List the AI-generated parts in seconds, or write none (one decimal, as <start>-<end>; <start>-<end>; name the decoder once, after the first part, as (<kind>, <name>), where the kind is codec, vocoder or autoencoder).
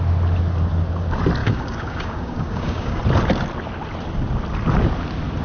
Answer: 1.4-3.0 (codec, DAC)